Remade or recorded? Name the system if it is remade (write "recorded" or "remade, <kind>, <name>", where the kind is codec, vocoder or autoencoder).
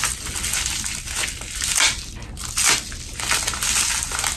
recorded